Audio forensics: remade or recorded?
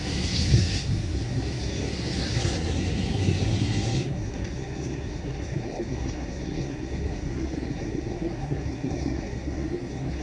remade